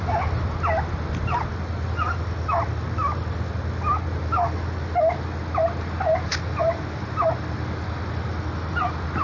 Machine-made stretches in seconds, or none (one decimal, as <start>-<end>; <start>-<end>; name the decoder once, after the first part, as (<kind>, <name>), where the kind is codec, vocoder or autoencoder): none